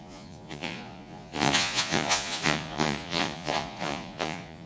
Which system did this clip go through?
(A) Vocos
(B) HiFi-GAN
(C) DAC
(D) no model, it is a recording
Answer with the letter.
A